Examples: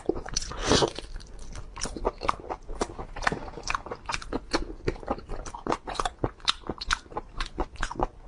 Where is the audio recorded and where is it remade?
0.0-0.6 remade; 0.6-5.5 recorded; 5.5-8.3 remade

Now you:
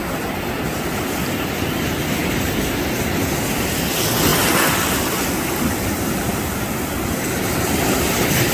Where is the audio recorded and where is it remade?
0.0-8.5 recorded

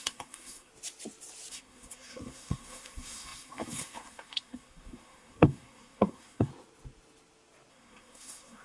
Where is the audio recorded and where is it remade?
0.0-0.7 remade; 0.7-1.5 recorded; 1.5-6.5 remade; 6.5-7.7 recorded; 7.7-8.6 remade

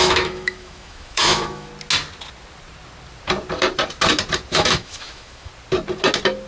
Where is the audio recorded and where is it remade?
0.0-1.7 remade; 1.7-4.5 recorded; 4.5-5.5 remade; 5.5-6.5 recorded

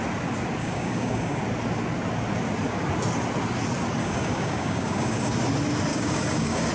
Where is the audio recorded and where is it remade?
0.0-0.6 recorded; 0.6-1.4 remade; 1.4-4.0 recorded; 4.0-5.3 remade; 5.3-5.9 recorded; 5.9-6.7 remade

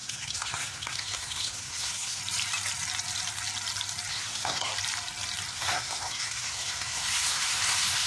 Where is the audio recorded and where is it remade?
0.0-2.2 remade; 2.2-4.1 recorded; 4.1-4.7 remade; 4.7-5.5 recorded; 5.5-8.1 remade

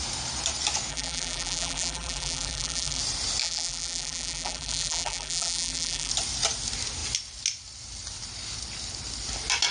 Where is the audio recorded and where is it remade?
0.0-0.9 recorded; 0.9-3.0 remade; 3.0-3.4 recorded; 3.4-6.1 remade; 6.1-9.7 recorded

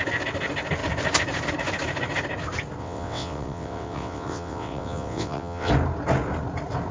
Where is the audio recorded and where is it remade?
0.0-2.8 recorded; 2.8-5.7 remade; 5.7-6.9 recorded